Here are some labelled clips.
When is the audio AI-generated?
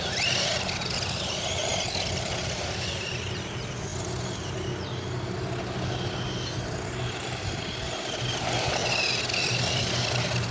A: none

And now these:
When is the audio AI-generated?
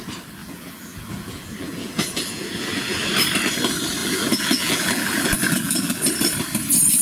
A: 0.4-3.0 (vocoder, BigVGAN v2); 4.0-6.0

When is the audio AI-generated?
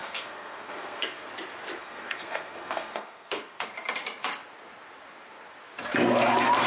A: 0.0-1.3 (codec, SNAC); 1.8-3.7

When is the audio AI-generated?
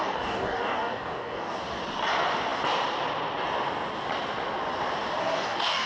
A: 0.0-1.7 (codec, DAC); 5.2-5.9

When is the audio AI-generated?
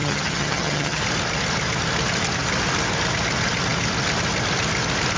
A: 0.0-1.0 (vocoder, HiFi-GAN)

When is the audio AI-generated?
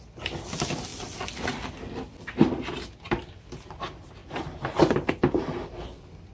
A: none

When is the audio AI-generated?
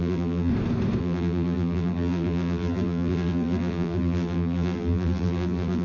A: 0.0-0.5 (vocoder, BigVGAN v2); 1.0-5.8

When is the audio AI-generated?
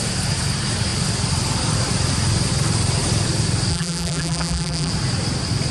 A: 3.7-4.9 (vocoder, BigVGAN v2)